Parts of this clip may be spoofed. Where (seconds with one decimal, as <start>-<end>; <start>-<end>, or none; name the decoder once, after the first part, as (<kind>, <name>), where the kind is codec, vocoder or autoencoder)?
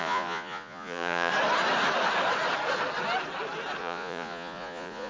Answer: 0.0-1.3 (vocoder, Vocos); 3.8-5.1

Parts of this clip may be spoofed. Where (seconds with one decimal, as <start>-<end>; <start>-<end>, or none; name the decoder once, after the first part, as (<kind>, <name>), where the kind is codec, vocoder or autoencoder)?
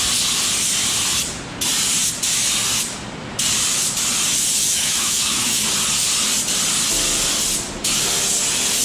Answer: 4.6-5.6 (autoencoder, DAC-VAE)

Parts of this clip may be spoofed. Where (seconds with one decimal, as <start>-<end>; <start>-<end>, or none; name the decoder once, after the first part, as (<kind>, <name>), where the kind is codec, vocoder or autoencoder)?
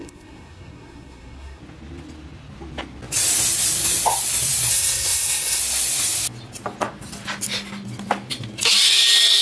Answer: 0.0-1.6 (codec, SNAC); 4.7-5.6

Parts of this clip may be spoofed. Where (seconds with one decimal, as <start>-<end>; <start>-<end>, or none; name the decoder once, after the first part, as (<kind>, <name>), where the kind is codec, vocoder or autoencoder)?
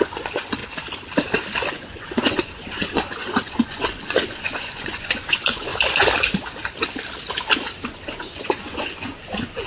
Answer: 0.0-0.6 (vocoder, Vocos); 1.7-5.7; 7.8-9.7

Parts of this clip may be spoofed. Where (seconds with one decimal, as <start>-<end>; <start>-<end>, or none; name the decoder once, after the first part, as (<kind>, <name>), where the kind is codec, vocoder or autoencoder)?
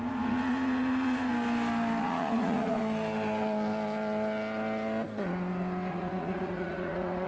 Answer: 0.0-1.3 (vocoder, Vocos); 2.0-2.8; 5.9-7.3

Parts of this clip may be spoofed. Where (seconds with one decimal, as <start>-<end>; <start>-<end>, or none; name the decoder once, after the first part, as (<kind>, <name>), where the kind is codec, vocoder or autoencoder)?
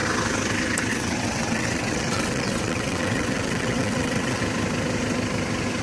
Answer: 0.9-4.4 (vocoder, WaveNeXt)